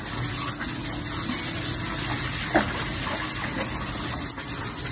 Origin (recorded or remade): recorded